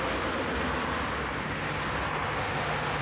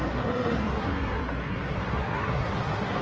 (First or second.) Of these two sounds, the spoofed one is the second